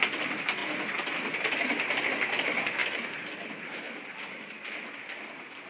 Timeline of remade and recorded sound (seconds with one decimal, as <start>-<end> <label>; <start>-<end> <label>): 0.0-5.7 recorded